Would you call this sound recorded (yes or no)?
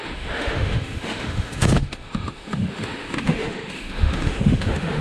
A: no